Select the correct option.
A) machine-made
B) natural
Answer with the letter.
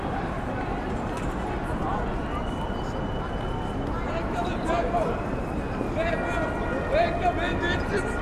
B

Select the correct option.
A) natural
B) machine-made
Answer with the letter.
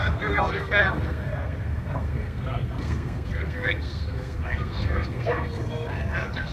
B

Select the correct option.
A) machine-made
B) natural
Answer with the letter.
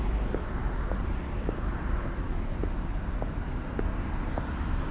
B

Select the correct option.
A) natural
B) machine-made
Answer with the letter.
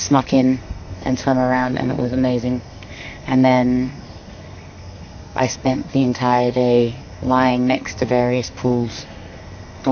B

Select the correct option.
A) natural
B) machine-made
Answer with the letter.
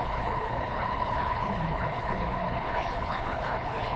B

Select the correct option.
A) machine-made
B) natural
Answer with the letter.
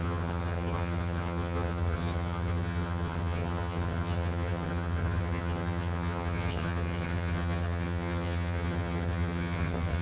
A